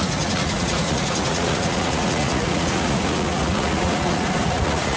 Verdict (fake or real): fake